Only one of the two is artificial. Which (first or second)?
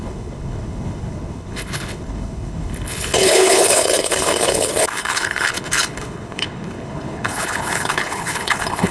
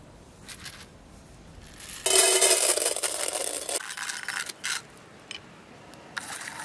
first